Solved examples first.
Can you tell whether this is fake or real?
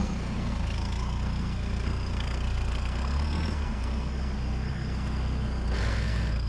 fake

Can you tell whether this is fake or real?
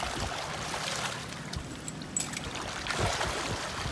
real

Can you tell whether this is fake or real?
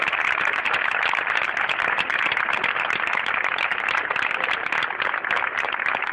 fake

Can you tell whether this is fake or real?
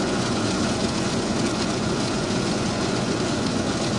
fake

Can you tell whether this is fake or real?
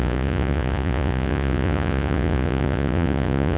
fake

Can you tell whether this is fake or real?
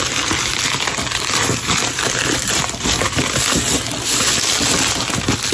real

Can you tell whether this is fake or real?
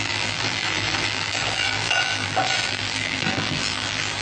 fake